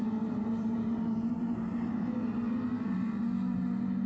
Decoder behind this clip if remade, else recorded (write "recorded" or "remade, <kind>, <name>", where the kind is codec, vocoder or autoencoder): recorded